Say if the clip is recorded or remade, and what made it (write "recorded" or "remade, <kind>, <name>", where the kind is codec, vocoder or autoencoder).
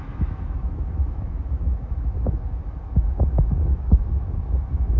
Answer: remade, autoencoder, DAC-VAE